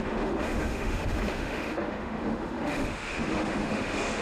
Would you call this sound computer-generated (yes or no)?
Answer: yes